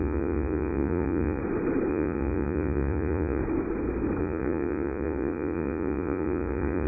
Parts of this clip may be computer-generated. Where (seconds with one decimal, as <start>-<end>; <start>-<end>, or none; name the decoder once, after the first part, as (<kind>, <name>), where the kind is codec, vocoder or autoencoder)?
0.0-1.4 (vocoder, Vocos); 1.9-3.4; 4.2-6.9